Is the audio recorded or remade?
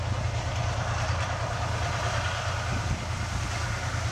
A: recorded